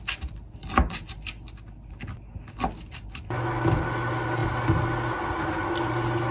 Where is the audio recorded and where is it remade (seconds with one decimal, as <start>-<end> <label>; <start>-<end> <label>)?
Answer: 0.0-6.3 recorded